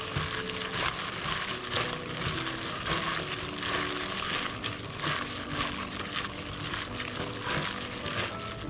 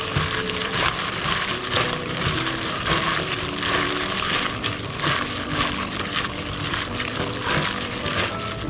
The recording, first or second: first